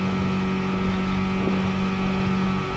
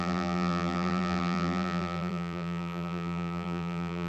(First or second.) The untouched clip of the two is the first